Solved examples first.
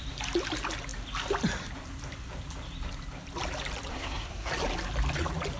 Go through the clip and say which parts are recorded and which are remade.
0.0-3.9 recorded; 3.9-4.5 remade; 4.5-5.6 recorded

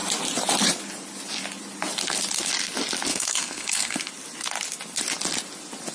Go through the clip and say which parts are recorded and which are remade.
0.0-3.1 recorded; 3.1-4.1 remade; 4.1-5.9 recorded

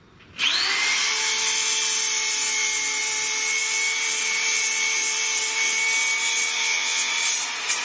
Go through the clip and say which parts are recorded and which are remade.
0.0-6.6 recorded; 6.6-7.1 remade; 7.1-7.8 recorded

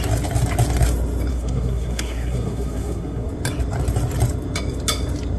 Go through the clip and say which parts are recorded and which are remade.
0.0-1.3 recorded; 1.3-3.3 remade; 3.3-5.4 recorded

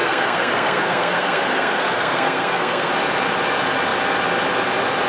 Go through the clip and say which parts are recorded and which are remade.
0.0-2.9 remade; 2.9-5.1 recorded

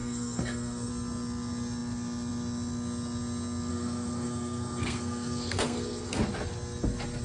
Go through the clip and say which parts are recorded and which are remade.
0.0-0.9 remade; 0.9-3.7 recorded; 3.7-6.2 remade; 6.2-7.2 recorded

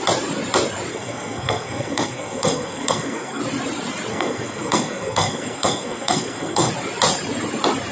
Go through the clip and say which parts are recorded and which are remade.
0.0-0.9 recorded; 0.9-3.4 remade; 3.4-4.1 recorded; 4.1-6.7 remade; 6.7-7.9 recorded